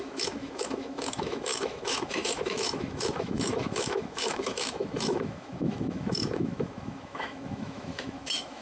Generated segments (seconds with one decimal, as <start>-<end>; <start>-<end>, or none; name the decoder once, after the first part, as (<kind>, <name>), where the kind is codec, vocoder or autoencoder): 0.0-8.6 (autoencoder, DAC-VAE)